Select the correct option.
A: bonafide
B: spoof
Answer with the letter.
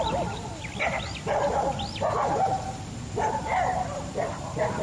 A